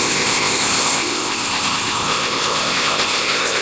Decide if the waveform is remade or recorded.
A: remade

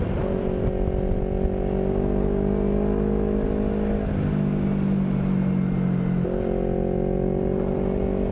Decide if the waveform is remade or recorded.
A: recorded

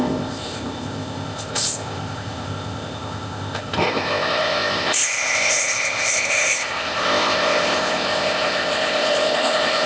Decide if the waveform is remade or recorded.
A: remade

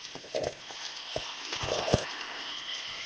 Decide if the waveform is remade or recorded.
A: remade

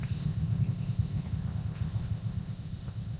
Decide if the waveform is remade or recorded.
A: remade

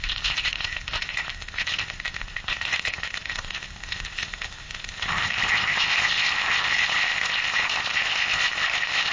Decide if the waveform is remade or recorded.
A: remade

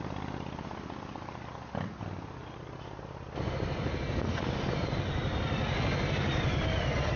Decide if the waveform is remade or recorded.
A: recorded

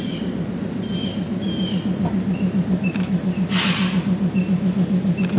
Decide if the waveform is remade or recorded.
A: recorded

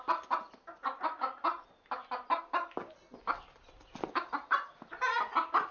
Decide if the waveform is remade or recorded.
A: recorded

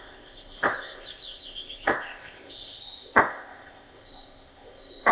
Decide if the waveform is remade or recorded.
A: remade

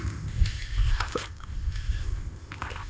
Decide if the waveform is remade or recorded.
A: remade